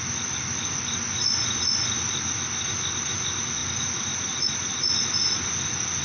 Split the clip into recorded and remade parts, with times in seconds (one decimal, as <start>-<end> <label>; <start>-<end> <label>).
0.0-6.0 recorded